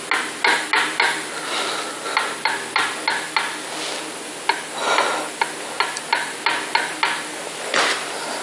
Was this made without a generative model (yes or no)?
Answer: yes